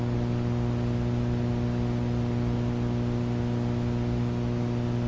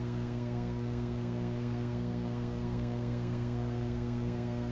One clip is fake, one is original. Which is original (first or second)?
first